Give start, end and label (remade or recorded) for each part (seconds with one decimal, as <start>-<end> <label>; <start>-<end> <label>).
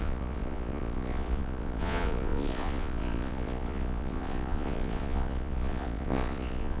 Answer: 0.0-6.8 remade